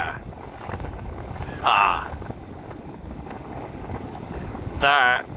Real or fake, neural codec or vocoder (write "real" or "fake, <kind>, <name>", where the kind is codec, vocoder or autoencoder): fake, codec, DAC